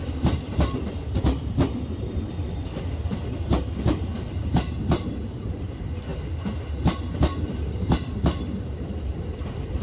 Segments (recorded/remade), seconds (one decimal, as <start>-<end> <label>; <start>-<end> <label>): 0.0-6.1 remade; 6.1-8.1 recorded; 8.1-9.8 remade